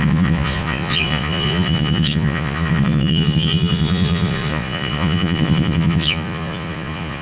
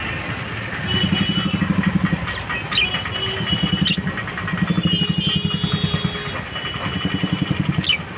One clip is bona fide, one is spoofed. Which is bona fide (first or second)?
second